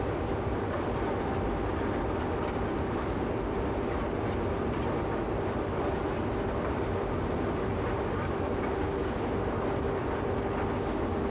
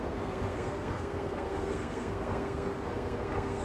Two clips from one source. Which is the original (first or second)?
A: first